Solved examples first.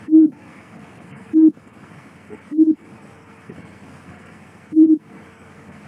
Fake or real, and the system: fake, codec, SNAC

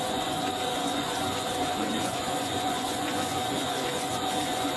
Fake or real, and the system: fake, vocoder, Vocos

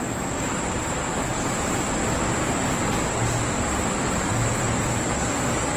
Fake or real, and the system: real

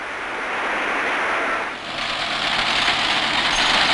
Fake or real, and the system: real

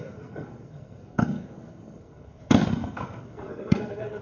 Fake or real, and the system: fake, codec, SNAC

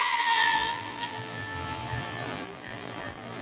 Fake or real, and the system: fake, vocoder, BigVGAN v2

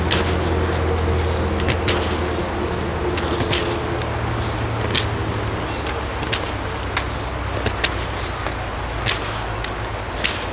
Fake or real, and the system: real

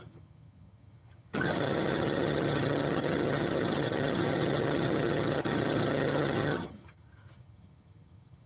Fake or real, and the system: fake, vocoder, HiFi-GAN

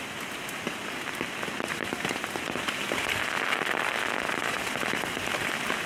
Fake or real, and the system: real